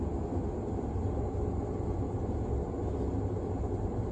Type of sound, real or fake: real